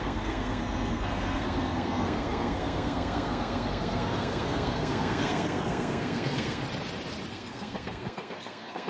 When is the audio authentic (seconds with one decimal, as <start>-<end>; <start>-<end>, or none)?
6.6-7.3

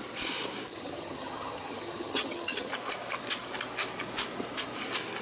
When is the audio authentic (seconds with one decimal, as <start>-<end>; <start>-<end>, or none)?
0.0-0.7; 2.7-5.2

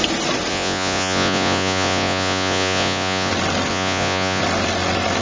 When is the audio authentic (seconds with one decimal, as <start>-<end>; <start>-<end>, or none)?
0.0-0.5; 3.3-3.7; 4.4-5.2

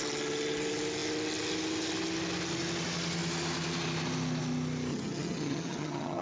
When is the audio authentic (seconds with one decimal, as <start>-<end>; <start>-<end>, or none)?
0.0-4.9